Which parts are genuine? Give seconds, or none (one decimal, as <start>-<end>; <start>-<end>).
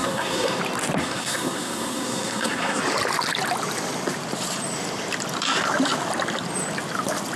0.6-1.0; 2.8-7.4